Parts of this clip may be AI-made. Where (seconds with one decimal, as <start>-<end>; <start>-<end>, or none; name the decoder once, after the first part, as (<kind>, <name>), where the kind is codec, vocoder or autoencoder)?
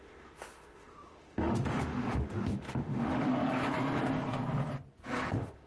0.0-3.3 (autoencoder, DAC-VAE); 5.3-5.7